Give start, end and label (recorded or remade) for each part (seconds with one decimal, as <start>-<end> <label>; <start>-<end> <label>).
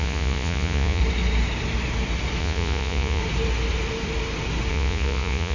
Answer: 0.0-1.0 remade; 1.0-2.4 recorded; 2.4-3.2 remade; 3.2-4.7 recorded; 4.7-5.5 remade